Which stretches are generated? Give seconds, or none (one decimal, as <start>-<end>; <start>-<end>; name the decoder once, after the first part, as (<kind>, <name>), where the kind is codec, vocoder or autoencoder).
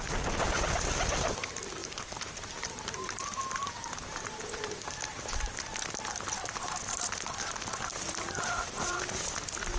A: 1.8-4.4 (vocoder, BigVGAN v2)